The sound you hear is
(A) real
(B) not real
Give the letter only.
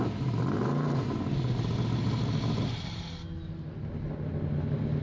A